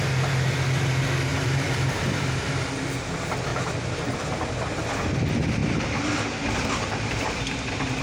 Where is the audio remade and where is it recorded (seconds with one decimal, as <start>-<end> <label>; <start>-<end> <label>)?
0.0-1.3 recorded; 1.3-2.5 remade; 2.5-3.5 recorded; 3.5-4.7 remade; 4.7-5.6 recorded; 5.6-7.4 remade; 7.4-8.0 recorded